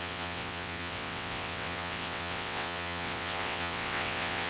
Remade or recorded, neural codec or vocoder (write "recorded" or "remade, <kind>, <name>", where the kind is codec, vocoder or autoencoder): remade, vocoder, WaveNeXt